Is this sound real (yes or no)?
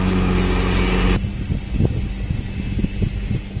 yes